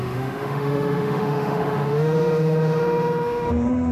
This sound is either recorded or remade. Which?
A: remade